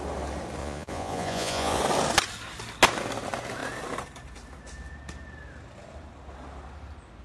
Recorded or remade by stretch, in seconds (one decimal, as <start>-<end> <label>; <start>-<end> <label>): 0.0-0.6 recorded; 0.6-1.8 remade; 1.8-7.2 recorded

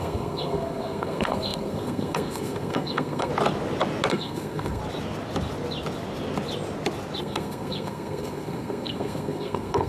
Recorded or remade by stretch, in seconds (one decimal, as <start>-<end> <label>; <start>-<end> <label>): 0.0-3.3 remade; 3.3-4.1 recorded; 4.1-4.8 remade; 4.8-7.2 recorded; 7.2-9.9 remade

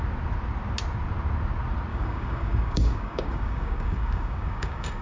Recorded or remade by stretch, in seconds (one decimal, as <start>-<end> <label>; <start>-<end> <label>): 0.0-1.9 recorded; 1.9-5.0 remade

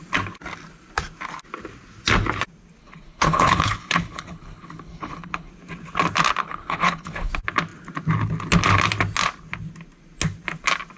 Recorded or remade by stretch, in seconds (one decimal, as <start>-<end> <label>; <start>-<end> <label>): 0.0-2.8 recorded; 2.8-5.5 remade; 5.5-6.4 recorded; 6.4-7.3 remade; 7.3-11.0 recorded